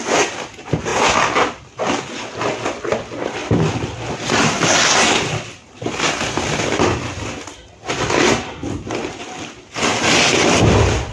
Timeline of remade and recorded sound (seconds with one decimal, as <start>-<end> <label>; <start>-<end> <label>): 0.0-11.1 recorded

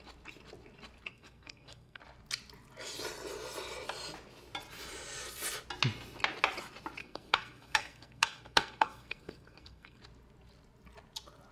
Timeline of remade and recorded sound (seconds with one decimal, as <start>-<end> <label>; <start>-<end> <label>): 0.0-1.1 recorded; 1.1-2.0 remade; 2.0-7.0 recorded; 7.0-10.0 remade; 10.0-11.5 recorded

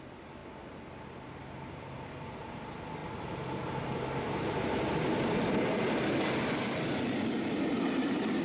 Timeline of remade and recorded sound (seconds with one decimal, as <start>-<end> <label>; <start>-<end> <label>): 0.0-0.4 remade; 0.4-1.4 recorded; 1.4-3.0 remade; 3.0-5.9 recorded; 5.9-8.4 remade

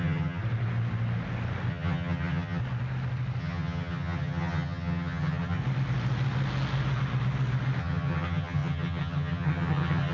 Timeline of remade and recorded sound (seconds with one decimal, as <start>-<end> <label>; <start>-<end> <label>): 0.0-0.4 remade; 0.4-1.7 recorded; 1.7-2.6 remade; 2.6-3.4 recorded; 3.4-5.6 remade; 5.6-7.8 recorded; 7.8-10.1 remade

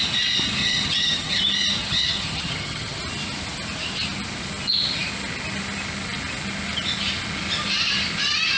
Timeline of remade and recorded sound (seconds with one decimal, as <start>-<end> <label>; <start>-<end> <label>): 0.0-0.6 recorded; 0.6-1.4 remade; 1.4-1.8 recorded; 1.8-3.0 remade; 3.0-8.6 recorded

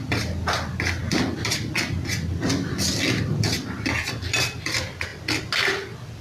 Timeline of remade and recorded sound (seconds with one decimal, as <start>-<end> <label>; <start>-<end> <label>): 0.0-6.2 recorded

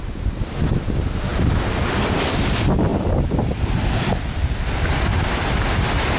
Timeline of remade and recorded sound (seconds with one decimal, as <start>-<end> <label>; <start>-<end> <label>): 0.0-6.2 recorded

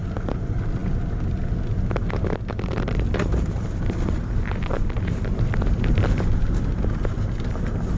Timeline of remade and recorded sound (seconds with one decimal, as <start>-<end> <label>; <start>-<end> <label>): 0.0-8.0 recorded